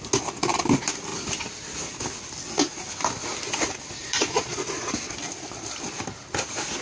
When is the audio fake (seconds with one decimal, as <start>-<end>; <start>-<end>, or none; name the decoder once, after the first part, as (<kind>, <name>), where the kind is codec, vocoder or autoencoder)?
4.0-4.9 (vocoder, Vocos)